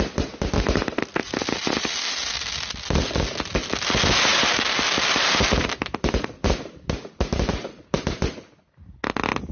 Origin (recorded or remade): recorded